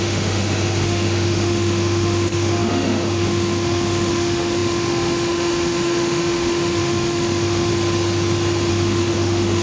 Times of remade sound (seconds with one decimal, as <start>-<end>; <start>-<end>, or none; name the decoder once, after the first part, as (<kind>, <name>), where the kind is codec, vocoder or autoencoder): 0.0-7.7 (autoencoder, DAC-VAE); 8.7-9.6